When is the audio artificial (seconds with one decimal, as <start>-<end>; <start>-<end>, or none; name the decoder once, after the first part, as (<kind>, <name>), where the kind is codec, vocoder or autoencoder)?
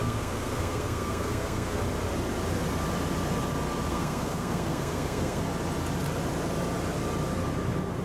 0.0-1.8 (codec, SNAC); 3.9-5.4